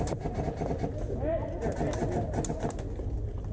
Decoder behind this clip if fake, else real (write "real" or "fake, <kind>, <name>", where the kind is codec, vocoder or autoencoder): real